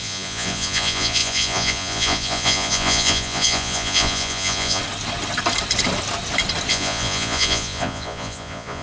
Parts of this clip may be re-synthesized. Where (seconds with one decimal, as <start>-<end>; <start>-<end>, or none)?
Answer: 0.0-4.8; 6.7-8.8